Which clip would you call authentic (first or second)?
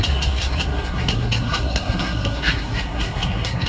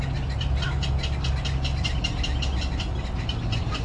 second